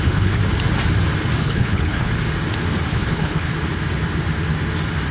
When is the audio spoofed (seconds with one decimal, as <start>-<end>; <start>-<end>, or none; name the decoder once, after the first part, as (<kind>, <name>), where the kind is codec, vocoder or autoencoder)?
0.0-0.4 (codec, HILCodec); 1.4-2.1; 2.9-3.5